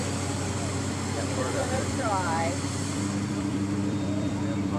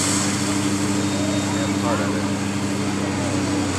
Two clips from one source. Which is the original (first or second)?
second